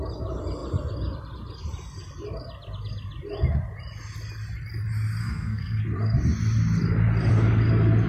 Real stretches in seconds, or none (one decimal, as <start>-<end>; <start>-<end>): 0.0-5.2; 5.8-8.1